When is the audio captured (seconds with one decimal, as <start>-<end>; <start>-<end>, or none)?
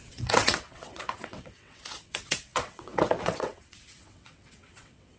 none